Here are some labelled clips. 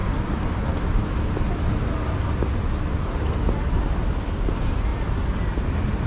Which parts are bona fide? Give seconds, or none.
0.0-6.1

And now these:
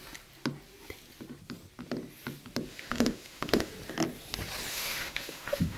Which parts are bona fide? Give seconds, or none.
0.0-2.7; 3.7-4.7